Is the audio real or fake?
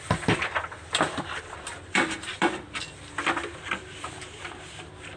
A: real